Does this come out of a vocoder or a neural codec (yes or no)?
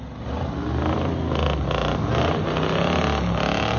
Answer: no